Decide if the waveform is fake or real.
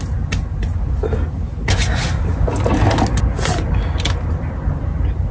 real